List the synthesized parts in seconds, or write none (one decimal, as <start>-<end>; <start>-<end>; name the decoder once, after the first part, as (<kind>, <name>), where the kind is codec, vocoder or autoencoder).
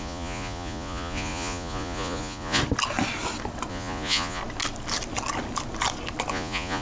0.0-2.6 (vocoder, Vocos); 3.7-4.4; 6.3-6.8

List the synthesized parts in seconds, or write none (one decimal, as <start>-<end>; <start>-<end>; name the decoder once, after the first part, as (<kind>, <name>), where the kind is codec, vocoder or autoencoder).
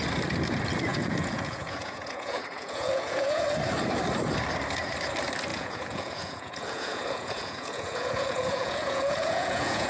0.9-3.4 (vocoder, Vocos); 5.5-9.9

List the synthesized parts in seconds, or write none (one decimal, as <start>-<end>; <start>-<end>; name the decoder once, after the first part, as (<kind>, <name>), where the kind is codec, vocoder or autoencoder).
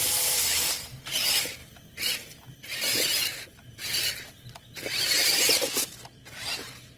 none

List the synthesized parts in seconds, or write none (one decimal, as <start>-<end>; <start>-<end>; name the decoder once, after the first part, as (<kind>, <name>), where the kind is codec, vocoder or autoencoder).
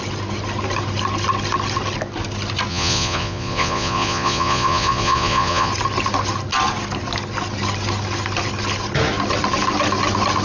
2.7-5.7 (vocoder, Vocos)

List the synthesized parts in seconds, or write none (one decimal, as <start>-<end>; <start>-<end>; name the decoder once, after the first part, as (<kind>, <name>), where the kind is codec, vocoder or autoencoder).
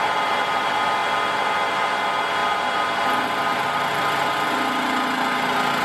none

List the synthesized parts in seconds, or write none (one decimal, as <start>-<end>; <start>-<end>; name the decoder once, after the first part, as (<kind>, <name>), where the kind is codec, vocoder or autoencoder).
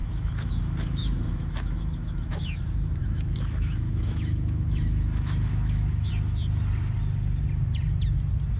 0.0-2.6 (autoencoder, DAC-VAE); 3.0-6.1